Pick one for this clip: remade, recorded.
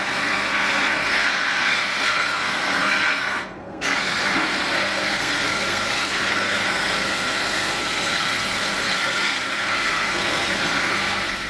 remade